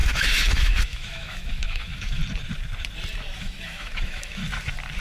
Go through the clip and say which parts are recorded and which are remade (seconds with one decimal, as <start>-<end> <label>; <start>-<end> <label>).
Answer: 0.0-2.2 remade; 2.2-3.4 recorded; 3.4-4.4 remade; 4.4-5.0 recorded